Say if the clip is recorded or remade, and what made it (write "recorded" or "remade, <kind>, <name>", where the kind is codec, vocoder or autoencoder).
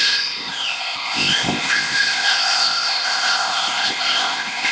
remade, codec, ZipCodec